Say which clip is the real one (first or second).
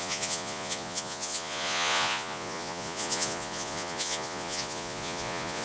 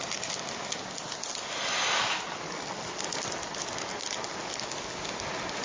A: second